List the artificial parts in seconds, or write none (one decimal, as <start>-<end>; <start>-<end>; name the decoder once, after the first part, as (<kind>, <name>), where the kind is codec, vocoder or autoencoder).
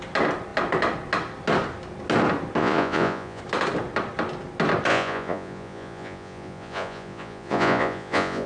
2.6-3.4 (vocoder, Vocos); 4.9-8.5